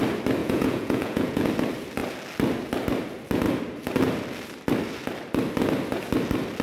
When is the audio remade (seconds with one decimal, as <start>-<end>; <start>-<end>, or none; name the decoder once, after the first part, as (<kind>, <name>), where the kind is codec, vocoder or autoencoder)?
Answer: 0.4-1.5 (vocoder, Vocos)